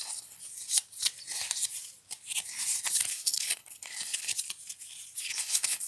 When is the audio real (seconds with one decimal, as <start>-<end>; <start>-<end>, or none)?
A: 0.4-3.1; 4.3-5.2